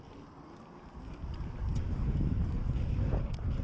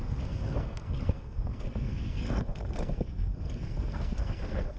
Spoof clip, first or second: second